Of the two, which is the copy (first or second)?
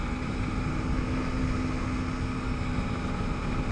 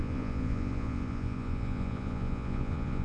second